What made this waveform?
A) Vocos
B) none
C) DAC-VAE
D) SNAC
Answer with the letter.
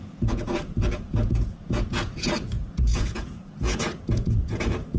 A